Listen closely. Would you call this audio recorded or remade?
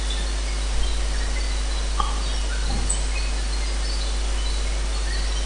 recorded